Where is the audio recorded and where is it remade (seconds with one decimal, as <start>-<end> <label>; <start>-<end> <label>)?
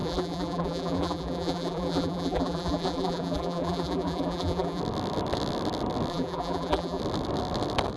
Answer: 0.0-4.8 remade; 4.8-6.1 recorded; 6.1-7.0 remade; 7.0-8.0 recorded